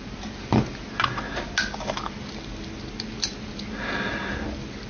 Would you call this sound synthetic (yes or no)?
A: no